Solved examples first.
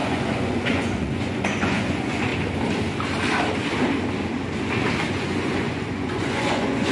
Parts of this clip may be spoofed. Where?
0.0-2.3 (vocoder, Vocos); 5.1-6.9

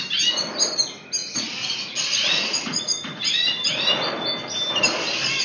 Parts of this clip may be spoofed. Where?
1.2-3.2 (vocoder, Vocos)

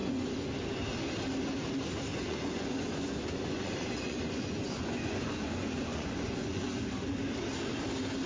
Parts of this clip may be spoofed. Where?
0.0-0.5 (vocoder, Vocos); 2.1-6.8